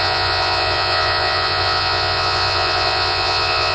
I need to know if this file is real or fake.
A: fake